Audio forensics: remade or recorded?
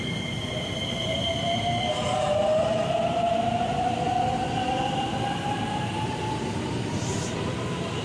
remade